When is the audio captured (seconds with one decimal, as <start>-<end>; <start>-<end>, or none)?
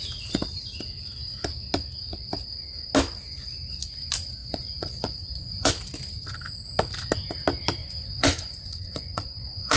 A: 0.0-4.4; 5.7-7.8